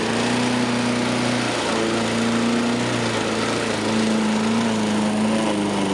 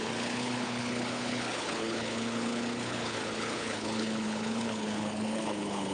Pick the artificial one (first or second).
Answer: second